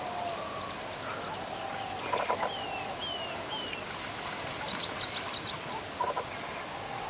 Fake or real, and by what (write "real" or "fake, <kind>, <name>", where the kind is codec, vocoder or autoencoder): real